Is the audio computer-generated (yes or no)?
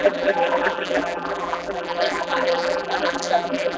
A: yes